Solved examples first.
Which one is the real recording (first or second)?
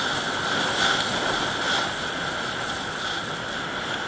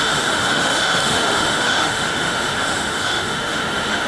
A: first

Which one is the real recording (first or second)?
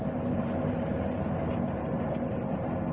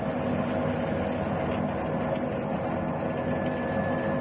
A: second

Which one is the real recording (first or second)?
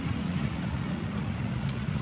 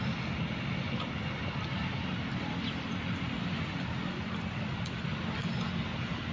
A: second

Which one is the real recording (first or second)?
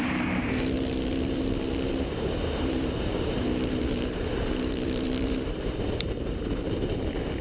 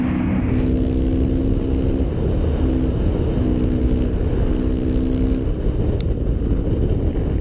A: second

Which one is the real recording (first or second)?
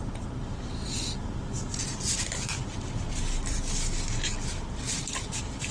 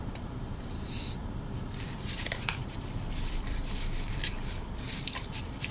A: first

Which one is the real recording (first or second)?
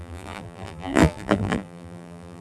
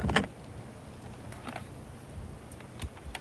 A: second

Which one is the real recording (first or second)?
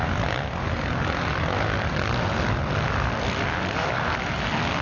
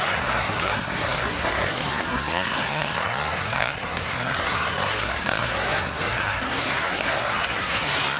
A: first